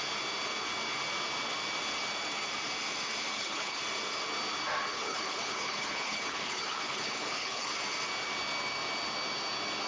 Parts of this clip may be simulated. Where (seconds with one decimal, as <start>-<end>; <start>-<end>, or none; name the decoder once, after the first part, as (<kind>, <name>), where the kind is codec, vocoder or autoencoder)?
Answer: 3.3-3.8 (codec, HILCodec); 4.9-7.7